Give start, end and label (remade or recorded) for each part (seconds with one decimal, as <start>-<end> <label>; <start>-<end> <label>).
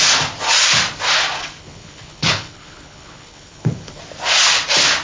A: 0.0-1.6 recorded; 1.6-4.0 remade; 4.0-5.0 recorded